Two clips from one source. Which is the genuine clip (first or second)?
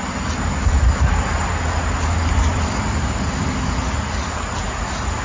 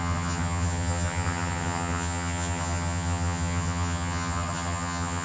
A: first